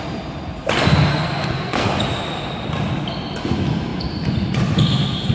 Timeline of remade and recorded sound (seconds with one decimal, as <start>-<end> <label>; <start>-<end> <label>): 0.0-1.1 recorded; 1.1-1.9 remade; 1.9-5.3 recorded